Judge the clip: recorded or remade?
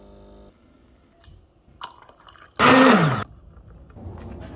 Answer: recorded